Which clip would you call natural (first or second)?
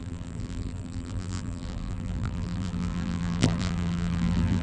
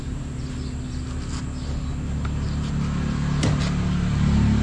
second